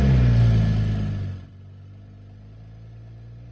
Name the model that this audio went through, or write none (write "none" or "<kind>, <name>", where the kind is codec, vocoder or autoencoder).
none